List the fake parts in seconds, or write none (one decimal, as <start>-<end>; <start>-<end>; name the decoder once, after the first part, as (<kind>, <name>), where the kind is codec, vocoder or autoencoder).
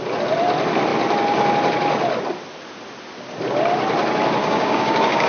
4.4-5.3 (codec, DAC)